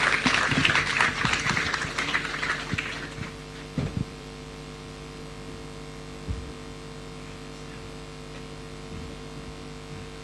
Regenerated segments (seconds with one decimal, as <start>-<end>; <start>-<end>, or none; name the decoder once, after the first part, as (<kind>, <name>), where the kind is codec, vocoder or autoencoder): 0.6-5.2 (vocoder, BigVGAN v2)